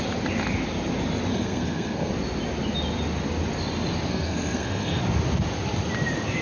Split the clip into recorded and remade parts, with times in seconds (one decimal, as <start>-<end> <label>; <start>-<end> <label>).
0.0-1.3 recorded; 1.3-2.1 remade; 2.1-4.1 recorded; 4.1-5.0 remade; 5.0-6.4 recorded